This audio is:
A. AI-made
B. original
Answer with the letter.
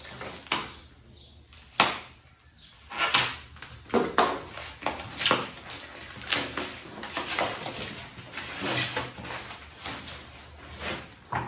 B